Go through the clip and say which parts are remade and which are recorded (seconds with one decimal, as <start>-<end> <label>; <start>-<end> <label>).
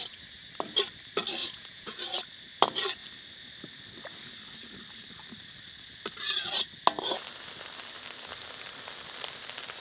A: 0.0-1.4 recorded; 1.4-2.0 remade; 2.0-9.8 recorded